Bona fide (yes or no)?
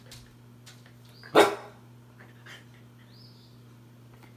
yes